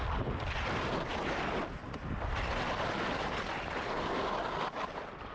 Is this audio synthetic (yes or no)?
no